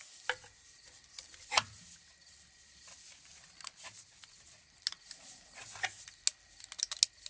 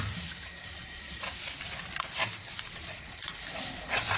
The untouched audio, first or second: first